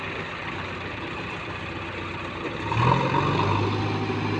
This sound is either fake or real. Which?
real